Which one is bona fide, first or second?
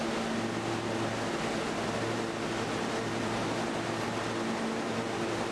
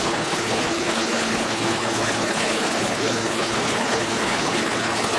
first